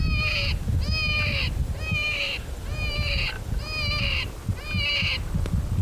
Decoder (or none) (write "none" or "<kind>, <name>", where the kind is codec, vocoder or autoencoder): none